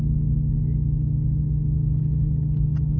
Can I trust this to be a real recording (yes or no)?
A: yes